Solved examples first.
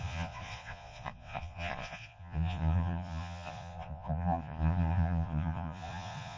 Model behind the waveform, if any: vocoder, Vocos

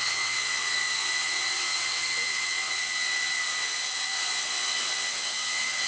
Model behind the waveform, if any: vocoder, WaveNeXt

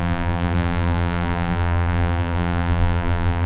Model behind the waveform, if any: vocoder, BigVGAN v2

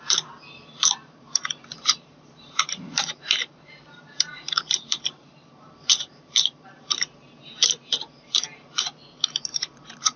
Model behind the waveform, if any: vocoder, BigVGAN v2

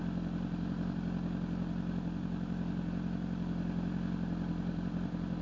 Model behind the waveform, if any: none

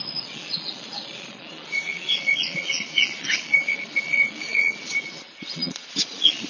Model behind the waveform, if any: vocoder, Vocos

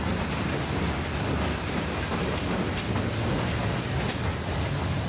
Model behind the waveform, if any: none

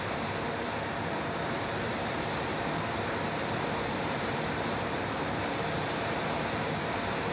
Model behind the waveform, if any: vocoder, BigVGAN v2